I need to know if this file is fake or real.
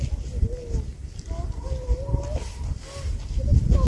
real